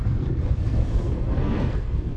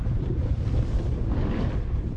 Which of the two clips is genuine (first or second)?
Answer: second